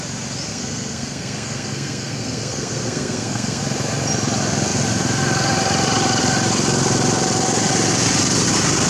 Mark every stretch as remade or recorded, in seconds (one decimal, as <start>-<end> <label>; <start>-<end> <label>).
0.0-0.5 recorded; 0.5-3.6 remade; 3.6-8.9 recorded